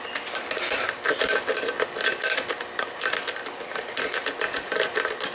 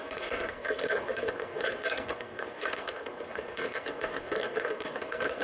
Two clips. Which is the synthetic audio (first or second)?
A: second